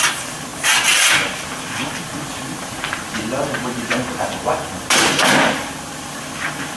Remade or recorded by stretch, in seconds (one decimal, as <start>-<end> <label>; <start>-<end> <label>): 0.0-6.8 recorded